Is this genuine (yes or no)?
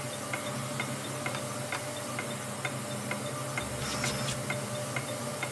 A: yes